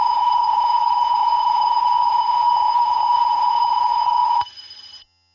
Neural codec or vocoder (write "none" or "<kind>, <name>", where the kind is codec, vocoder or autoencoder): vocoder, HiFi-GAN